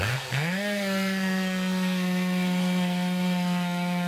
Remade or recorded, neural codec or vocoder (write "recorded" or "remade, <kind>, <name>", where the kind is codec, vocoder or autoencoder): remade, codec, SNAC